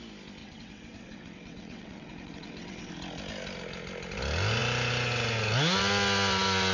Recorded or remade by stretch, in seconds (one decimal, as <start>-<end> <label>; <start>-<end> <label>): 0.0-0.4 recorded; 0.4-2.9 remade; 2.9-6.7 recorded